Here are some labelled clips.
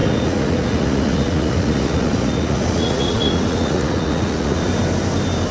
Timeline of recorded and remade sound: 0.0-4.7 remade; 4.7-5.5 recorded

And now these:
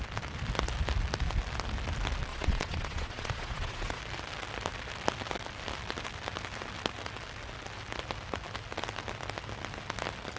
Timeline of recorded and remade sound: 0.0-2.3 recorded; 2.3-4.0 remade; 4.0-10.4 recorded

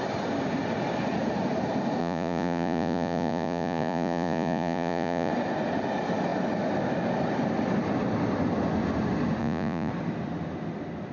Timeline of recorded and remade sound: 0.0-2.0 recorded; 2.0-5.3 remade; 5.3-9.4 recorded; 9.4-9.9 remade; 9.9-11.1 recorded

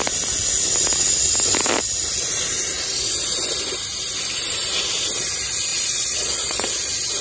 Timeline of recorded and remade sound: 0.0-5.7 recorded; 5.7-6.7 remade; 6.7-7.2 recorded

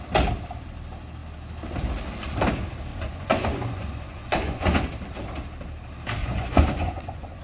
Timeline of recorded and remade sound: 0.0-2.9 recorded; 2.9-4.9 remade; 4.9-6.2 recorded; 6.2-7.4 remade

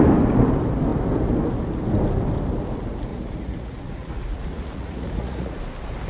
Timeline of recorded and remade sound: 0.0-3.1 recorded; 3.1-5.6 remade; 5.6-6.1 recorded

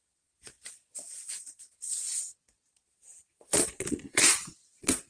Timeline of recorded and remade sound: 0.0-5.1 remade